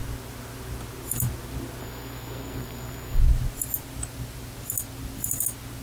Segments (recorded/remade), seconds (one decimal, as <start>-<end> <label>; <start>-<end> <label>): 0.0-1.8 recorded; 1.8-3.2 remade; 3.2-5.8 recorded